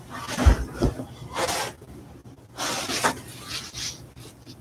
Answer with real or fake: fake